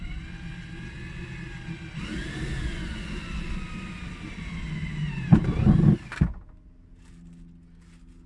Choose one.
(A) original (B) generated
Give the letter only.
A